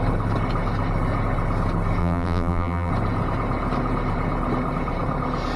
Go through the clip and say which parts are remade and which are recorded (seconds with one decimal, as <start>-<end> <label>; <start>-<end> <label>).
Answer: 0.0-2.0 recorded; 2.0-2.9 remade; 2.9-5.6 recorded

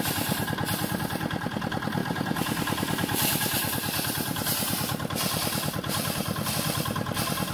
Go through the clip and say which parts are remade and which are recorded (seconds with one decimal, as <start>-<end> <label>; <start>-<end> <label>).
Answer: 0.0-7.5 recorded